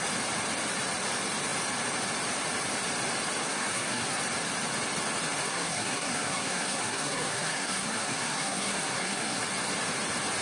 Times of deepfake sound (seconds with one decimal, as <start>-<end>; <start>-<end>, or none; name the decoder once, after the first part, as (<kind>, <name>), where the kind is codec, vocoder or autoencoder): 3.4-4.2 (codec, SNAC); 5.4-9.4